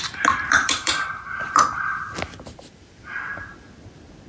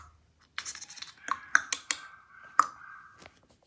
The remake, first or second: first